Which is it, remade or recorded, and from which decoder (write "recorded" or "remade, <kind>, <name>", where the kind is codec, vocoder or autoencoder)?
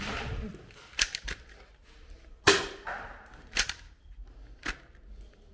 recorded